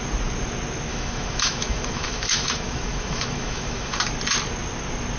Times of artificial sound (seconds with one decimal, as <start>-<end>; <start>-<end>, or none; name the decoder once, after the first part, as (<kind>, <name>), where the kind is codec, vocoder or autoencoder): 0.9-4.0 (autoencoder, DAC-VAE)